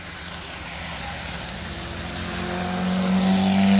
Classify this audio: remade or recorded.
recorded